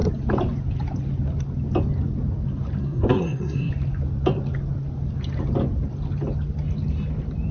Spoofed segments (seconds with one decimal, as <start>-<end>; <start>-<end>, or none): 2.8-3.7